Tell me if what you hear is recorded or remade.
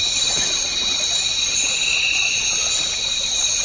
recorded